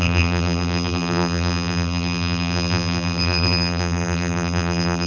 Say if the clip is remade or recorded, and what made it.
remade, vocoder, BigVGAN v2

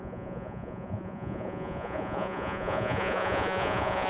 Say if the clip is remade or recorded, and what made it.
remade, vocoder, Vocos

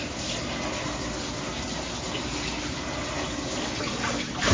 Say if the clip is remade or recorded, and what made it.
recorded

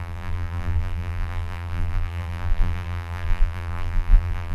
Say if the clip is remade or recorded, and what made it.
remade, vocoder, BigVGAN v2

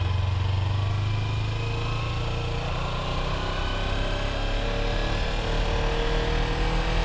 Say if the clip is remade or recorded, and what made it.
recorded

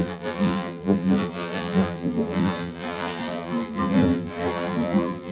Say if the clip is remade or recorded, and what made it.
remade, vocoder, BigVGAN v2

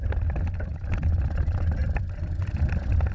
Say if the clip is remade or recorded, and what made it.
remade, vocoder, BigVGAN v2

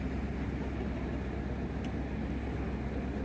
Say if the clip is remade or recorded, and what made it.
recorded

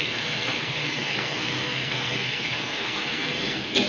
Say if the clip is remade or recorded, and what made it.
remade, codec, SNAC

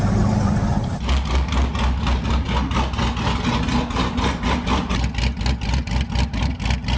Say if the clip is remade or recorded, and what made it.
recorded